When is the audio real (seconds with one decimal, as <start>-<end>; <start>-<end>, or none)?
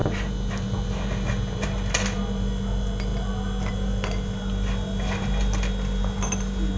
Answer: 0.0-6.8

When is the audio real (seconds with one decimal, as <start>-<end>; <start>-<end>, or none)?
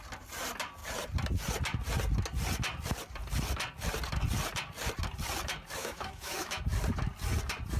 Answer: 0.0-5.8; 6.6-7.8